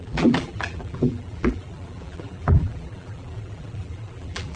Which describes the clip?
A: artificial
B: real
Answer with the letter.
A